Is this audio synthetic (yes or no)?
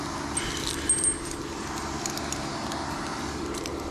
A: no